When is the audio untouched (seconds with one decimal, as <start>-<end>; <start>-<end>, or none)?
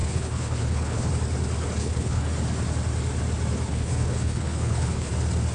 1.1-1.8; 2.3-3.7; 5.1-5.5